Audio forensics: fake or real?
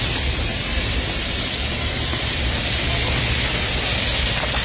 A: fake